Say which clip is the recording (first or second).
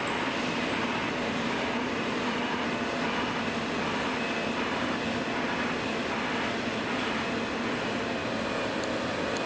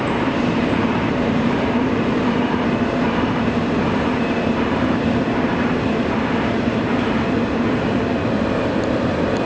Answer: first